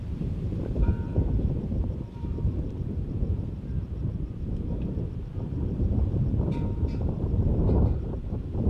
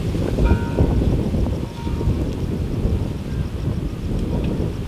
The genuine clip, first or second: second